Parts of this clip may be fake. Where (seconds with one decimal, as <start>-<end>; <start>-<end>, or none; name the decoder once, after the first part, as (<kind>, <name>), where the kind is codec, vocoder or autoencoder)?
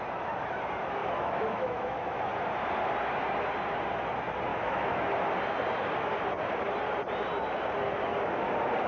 1.0-2.2 (autoencoder, DAC-VAE); 4.5-5.1